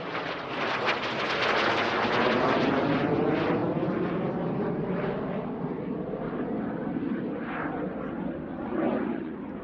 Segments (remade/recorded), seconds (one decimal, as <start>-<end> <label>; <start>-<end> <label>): 0.0-8.5 recorded; 8.5-9.6 remade